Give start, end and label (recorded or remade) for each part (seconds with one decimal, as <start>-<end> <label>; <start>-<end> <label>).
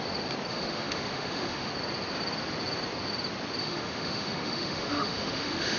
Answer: 0.0-0.5 recorded; 0.5-1.7 remade; 1.7-3.6 recorded; 3.6-5.8 remade